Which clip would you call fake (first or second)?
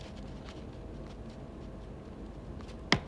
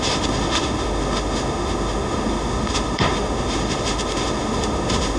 second